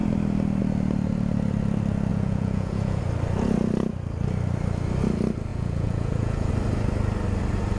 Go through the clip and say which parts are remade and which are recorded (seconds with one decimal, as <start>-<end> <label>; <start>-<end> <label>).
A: 0.0-2.1 recorded; 2.1-3.0 remade; 3.0-5.5 recorded; 5.5-6.5 remade; 6.5-7.8 recorded